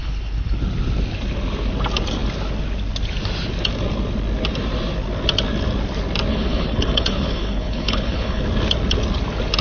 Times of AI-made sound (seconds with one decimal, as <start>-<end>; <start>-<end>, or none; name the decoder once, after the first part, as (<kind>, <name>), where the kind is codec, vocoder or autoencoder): 0.0-0.6 (codec, HILCodec); 6.3-8.4